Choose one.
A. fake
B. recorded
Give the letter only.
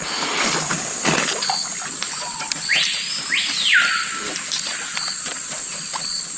B